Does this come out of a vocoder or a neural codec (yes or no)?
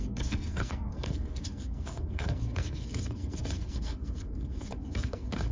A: yes